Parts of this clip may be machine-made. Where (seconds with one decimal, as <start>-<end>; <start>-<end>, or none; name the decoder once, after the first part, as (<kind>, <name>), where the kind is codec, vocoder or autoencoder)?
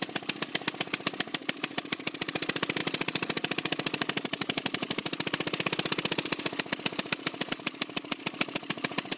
none